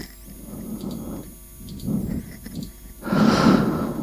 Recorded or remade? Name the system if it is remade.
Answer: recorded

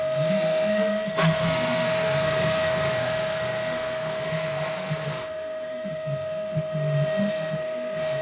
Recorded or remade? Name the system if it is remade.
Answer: remade, codec, SNAC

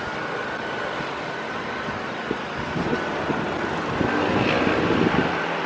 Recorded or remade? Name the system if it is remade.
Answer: recorded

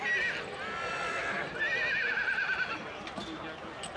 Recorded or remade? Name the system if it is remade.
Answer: recorded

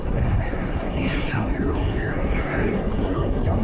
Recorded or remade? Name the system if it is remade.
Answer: remade, codec, SNAC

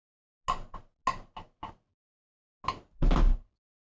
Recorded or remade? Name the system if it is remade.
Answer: recorded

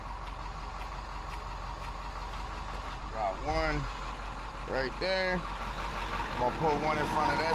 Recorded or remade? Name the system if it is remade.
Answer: recorded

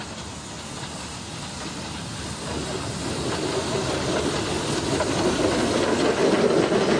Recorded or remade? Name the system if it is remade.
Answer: recorded